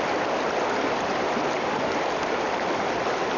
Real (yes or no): yes